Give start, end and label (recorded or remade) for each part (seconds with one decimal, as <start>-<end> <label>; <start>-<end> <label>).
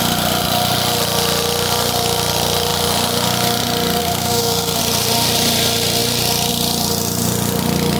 0.0-4.0 recorded; 4.0-4.8 remade; 4.8-8.0 recorded